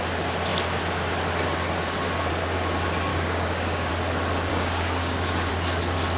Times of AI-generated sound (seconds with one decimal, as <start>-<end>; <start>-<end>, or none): 3.1-3.9; 4.5-5.5